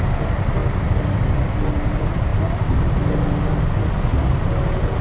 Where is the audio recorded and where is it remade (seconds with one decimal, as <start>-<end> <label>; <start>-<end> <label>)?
0.0-5.0 recorded

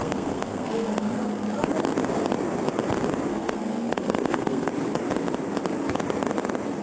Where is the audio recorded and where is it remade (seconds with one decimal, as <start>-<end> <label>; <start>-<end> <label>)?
0.0-1.2 remade; 1.2-3.3 recorded; 3.3-4.7 remade; 4.7-6.8 recorded

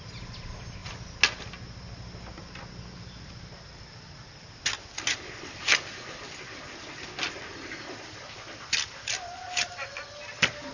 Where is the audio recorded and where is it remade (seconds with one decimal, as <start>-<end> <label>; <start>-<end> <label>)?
0.0-10.7 recorded

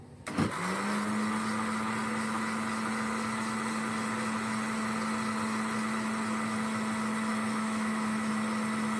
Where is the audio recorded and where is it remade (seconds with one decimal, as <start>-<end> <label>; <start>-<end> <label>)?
0.0-7.3 recorded; 7.3-8.3 remade; 8.3-9.0 recorded